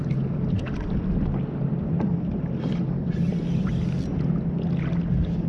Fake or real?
real